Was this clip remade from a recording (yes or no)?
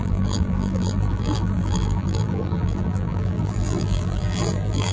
yes